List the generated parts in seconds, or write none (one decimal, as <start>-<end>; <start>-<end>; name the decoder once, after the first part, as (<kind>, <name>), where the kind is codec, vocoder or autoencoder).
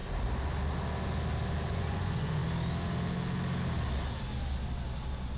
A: 1.7-2.4 (vocoder, Vocos)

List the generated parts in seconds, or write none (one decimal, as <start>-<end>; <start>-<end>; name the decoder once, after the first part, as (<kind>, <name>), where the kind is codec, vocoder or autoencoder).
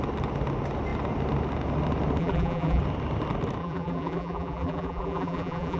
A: 2.2-2.8 (vocoder, BigVGAN v2); 3.6-5.8